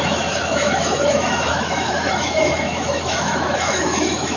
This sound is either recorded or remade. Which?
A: remade